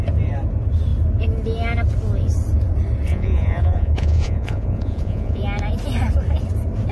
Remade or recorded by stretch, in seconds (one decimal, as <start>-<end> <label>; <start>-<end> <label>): 0.0-3.1 recorded; 3.1-5.4 remade; 5.4-6.9 recorded